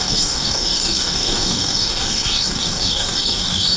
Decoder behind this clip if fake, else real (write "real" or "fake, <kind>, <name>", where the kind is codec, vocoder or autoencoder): fake, codec, DAC